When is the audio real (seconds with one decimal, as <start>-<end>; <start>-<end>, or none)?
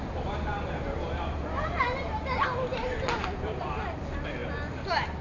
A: 0.0-5.2